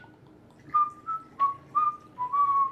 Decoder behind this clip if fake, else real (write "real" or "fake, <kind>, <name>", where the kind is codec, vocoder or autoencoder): real